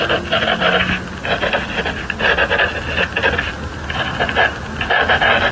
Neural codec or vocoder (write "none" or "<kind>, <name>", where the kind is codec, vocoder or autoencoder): none